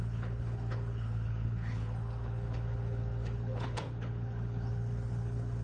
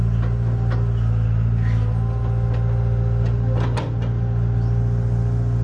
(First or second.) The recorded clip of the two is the second